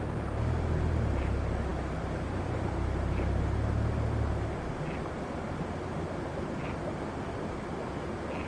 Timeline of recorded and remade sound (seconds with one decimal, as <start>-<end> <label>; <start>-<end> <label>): 0.0-8.5 recorded